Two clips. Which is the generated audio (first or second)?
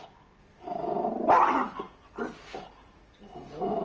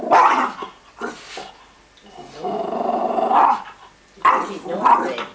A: first